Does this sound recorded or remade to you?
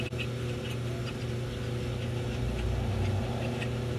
recorded